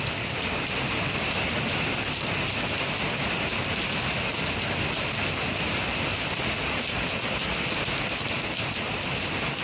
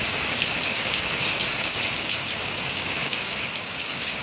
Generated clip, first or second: second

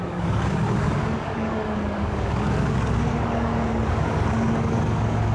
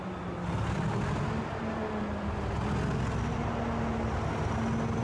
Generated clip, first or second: first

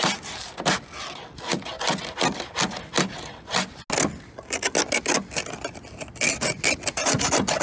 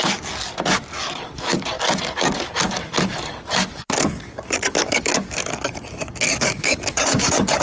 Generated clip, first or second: second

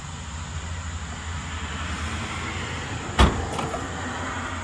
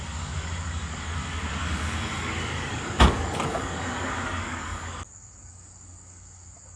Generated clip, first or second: second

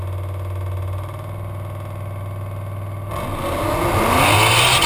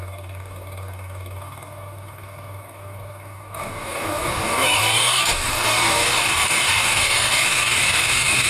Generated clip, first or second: second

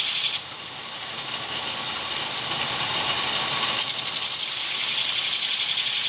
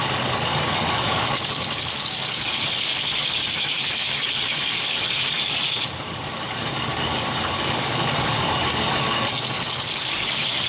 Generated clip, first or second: second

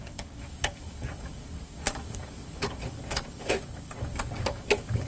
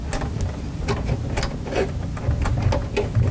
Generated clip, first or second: first